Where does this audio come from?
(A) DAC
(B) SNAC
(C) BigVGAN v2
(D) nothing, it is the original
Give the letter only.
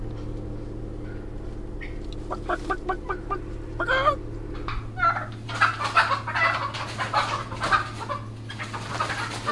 D